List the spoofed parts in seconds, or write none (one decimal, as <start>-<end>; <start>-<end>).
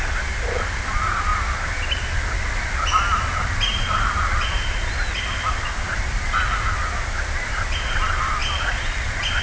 none